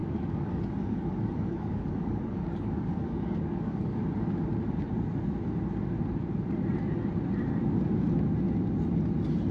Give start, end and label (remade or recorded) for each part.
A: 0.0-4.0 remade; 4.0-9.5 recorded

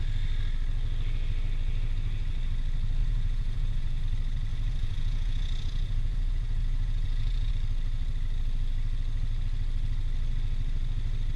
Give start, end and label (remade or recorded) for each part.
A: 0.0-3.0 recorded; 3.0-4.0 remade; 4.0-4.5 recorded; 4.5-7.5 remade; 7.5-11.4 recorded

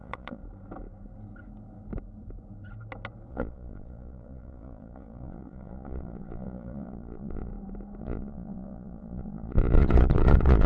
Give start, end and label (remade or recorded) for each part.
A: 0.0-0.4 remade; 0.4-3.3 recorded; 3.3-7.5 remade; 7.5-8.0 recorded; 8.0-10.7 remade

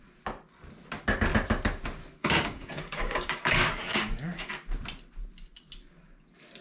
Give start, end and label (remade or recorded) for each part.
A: 0.0-2.2 recorded; 2.2-4.5 remade; 4.5-6.6 recorded

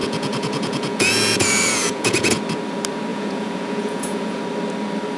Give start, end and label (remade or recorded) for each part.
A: 0.0-2.4 remade; 2.4-3.1 recorded; 3.1-4.4 remade; 4.4-5.2 recorded

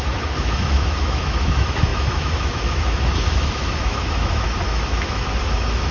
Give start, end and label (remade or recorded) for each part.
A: 0.0-5.9 remade